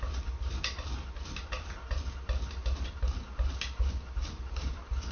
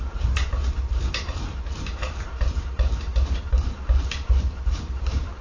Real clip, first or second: first